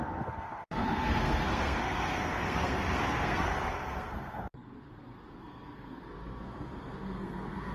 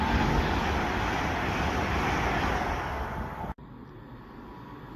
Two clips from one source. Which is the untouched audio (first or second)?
second